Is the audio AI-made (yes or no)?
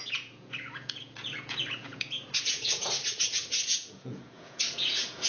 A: yes